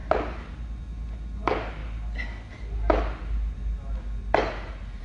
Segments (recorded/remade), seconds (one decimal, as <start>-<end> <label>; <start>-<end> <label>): 0.0-0.8 remade; 0.8-5.0 recorded